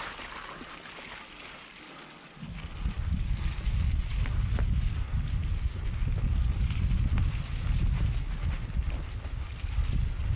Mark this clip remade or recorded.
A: recorded